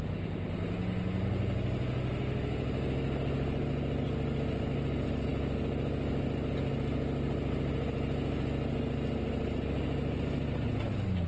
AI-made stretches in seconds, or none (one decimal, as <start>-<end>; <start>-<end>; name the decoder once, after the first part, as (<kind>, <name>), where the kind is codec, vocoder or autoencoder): none